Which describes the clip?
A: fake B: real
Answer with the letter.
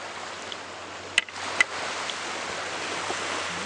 B